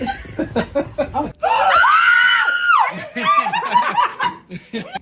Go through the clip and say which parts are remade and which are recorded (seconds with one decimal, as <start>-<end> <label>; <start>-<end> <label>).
0.0-4.1 recorded; 4.1-5.0 remade